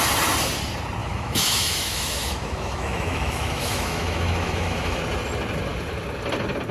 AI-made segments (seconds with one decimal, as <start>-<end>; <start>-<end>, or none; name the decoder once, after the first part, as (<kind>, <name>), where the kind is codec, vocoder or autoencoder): 1.0-5.0 (autoencoder, DAC-VAE)